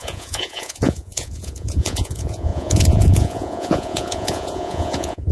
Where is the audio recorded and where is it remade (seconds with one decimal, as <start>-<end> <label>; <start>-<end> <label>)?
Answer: 0.0-5.3 remade